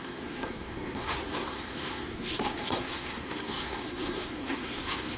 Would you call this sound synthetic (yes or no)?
yes